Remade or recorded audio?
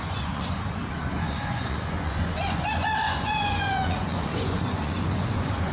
remade